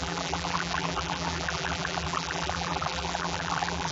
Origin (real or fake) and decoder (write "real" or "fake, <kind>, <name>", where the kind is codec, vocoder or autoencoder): fake, vocoder, BigVGAN v2